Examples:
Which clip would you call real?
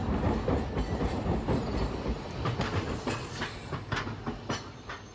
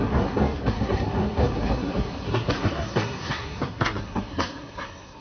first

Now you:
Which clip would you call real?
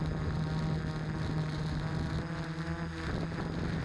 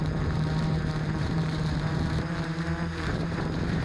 first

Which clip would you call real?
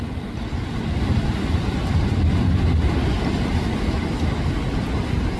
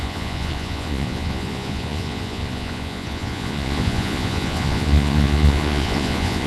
first